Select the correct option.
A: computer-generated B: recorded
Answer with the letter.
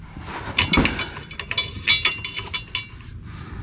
B